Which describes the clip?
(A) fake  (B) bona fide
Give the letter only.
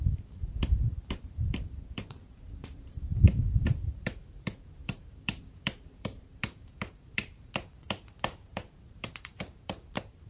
A